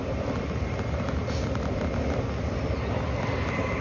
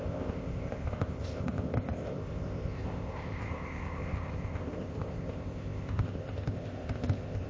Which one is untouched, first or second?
first